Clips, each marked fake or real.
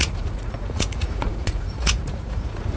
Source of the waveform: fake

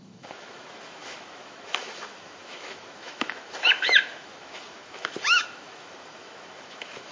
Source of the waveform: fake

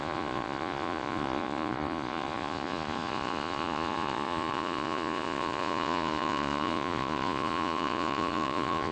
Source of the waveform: fake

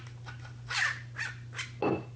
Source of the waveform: real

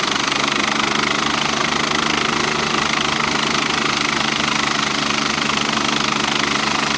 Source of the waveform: real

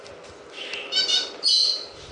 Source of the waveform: real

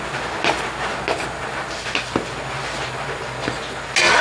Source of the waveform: real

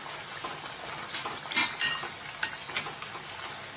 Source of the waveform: real